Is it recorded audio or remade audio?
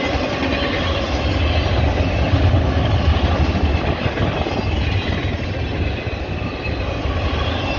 recorded